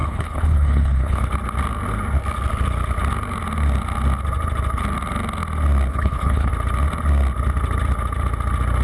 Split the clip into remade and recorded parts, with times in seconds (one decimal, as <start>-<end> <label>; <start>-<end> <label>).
0.0-1.2 remade; 1.2-5.9 recorded; 5.9-6.5 remade; 6.5-8.8 recorded